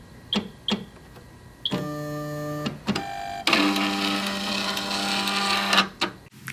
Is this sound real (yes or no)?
yes